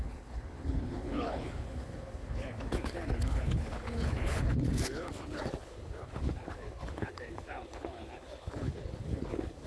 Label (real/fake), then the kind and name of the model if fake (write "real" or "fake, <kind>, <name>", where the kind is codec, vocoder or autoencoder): fake, codec, HILCodec